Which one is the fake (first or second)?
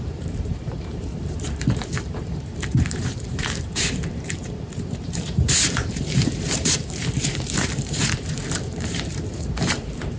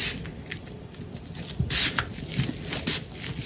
first